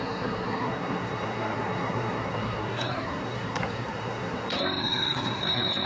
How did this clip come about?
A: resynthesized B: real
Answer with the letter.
A